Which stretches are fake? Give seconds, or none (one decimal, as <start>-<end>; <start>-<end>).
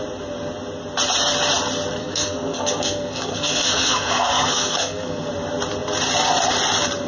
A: 2.0-5.3